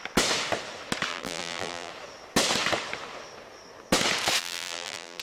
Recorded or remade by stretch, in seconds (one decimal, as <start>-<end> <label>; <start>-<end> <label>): 0.0-1.1 recorded; 1.1-1.9 remade; 1.9-4.4 recorded; 4.4-5.2 remade